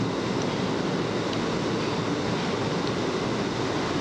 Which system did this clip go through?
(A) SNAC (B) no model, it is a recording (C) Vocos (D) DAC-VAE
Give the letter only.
B